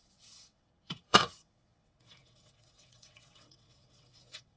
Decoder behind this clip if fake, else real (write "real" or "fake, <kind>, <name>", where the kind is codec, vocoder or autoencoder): fake, vocoder, WaveNeXt